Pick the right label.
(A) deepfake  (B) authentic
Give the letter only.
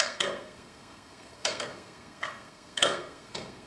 A